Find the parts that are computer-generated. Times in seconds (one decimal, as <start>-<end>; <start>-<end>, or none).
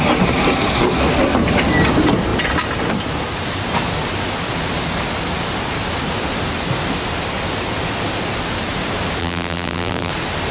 9.2-10.1